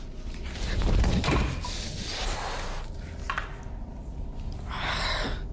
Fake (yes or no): no